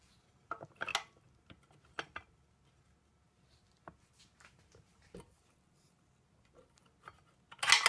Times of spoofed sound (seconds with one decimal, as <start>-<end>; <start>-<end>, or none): none